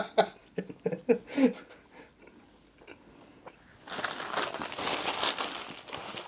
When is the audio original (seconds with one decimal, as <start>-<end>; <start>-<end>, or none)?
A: 0.0-6.3

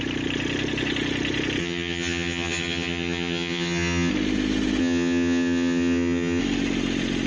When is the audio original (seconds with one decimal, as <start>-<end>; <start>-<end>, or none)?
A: 0.0-1.6; 4.1-4.8; 6.4-7.3